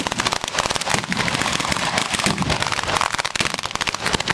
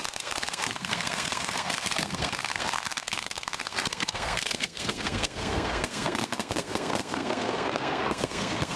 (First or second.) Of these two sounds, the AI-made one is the second